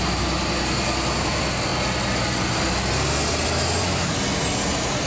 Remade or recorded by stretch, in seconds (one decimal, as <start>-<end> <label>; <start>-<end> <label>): 0.0-5.1 recorded